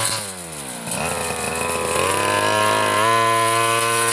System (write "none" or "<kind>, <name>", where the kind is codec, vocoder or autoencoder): none